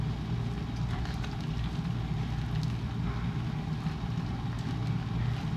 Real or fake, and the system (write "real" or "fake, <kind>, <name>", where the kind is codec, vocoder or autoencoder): real